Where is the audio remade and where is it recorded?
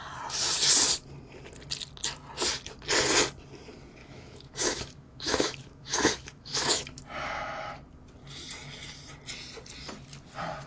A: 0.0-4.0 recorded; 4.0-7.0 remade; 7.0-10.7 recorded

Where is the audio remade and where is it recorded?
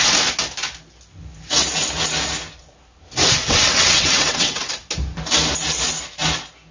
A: 0.0-3.4 recorded; 3.4-4.7 remade; 4.7-6.7 recorded